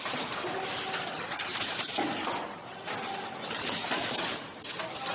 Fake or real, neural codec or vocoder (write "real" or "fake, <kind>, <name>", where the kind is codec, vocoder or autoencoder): real